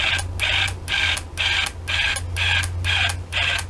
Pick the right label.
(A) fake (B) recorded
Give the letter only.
B